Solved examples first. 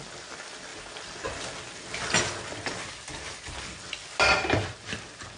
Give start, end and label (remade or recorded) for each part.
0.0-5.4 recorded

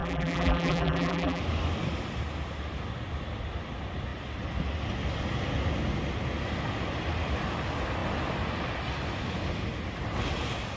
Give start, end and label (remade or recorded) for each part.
0.0-1.4 remade; 1.4-10.8 recorded

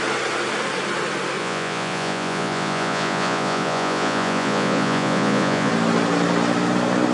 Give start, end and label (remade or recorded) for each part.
0.0-1.4 recorded; 1.4-5.7 remade; 5.7-7.1 recorded

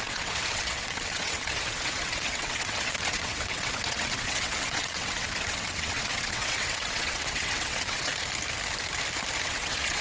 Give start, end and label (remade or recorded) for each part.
0.0-8.1 remade; 8.1-9.4 recorded; 9.4-10.0 remade

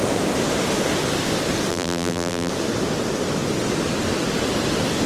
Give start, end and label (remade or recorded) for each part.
0.0-1.7 recorded; 1.7-2.5 remade; 2.5-5.1 recorded

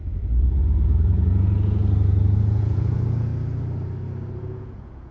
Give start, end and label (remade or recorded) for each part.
0.0-1.8 remade; 1.8-2.4 recorded; 2.4-3.3 remade; 3.3-4.4 recorded; 4.4-5.1 remade